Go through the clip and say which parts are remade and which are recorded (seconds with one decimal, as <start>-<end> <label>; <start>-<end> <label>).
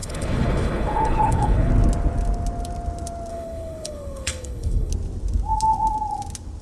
0.0-1.7 remade; 1.7-3.3 recorded; 3.3-4.9 remade; 4.9-6.6 recorded